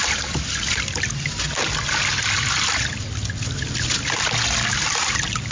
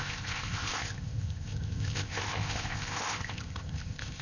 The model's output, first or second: second